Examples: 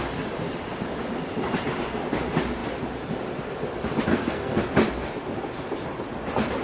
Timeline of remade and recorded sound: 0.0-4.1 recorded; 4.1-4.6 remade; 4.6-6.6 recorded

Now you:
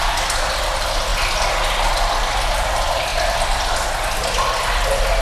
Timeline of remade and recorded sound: 0.0-5.2 recorded

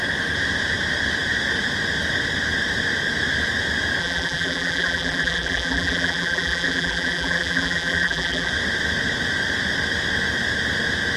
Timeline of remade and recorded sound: 0.0-4.0 recorded; 4.0-8.5 remade; 8.5-11.2 recorded

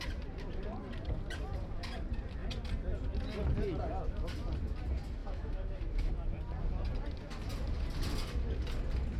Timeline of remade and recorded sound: 0.0-5.2 recorded; 5.2-6.1 remade; 6.1-9.2 recorded

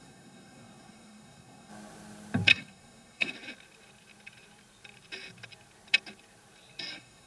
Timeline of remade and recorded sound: 0.0-1.7 remade; 1.7-2.5 recorded; 2.5-3.3 remade; 3.3-6.8 recorded; 6.8-7.3 remade